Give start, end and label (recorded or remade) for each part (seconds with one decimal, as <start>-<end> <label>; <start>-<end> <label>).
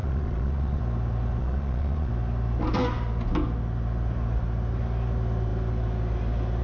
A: 0.0-0.8 remade; 0.8-1.4 recorded; 1.4-2.1 remade; 2.1-6.6 recorded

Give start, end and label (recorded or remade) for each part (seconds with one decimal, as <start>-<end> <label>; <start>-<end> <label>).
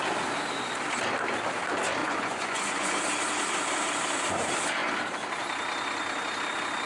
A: 0.0-2.0 recorded; 2.0-2.9 remade; 2.9-6.9 recorded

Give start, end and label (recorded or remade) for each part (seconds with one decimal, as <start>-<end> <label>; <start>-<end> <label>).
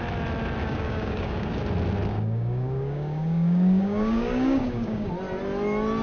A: 0.0-0.6 recorded; 0.6-1.6 remade; 1.6-2.1 recorded; 2.1-5.1 remade; 5.1-6.0 recorded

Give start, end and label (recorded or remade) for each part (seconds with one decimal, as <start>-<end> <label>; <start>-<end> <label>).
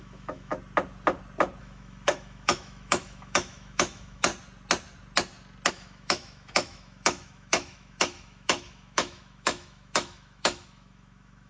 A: 0.0-0.5 remade; 0.5-1.6 recorded; 1.6-4.3 remade; 4.3-5.7 recorded; 5.7-11.5 remade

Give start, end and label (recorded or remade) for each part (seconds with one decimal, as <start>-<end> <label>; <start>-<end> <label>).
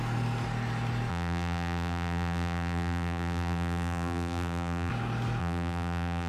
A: 0.0-1.1 recorded; 1.1-4.9 remade; 4.9-5.4 recorded; 5.4-6.3 remade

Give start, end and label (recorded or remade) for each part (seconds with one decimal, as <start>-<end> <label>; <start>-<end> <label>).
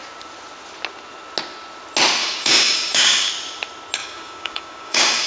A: 0.0-2.2 recorded; 2.2-3.3 remade; 3.3-4.0 recorded; 4.0-5.3 remade